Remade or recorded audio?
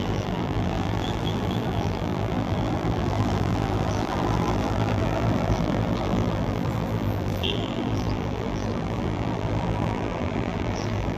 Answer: remade